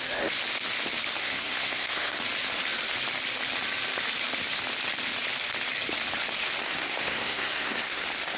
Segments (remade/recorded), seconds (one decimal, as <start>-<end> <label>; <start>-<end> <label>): 0.0-1.2 recorded; 1.2-2.2 remade; 2.2-6.8 recorded; 6.8-8.0 remade; 8.0-8.4 recorded